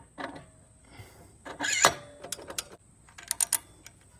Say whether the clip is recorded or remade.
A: recorded